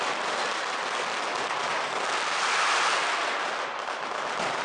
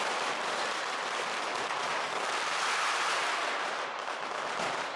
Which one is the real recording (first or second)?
first